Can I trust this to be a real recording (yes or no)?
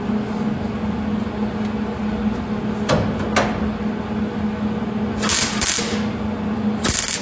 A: yes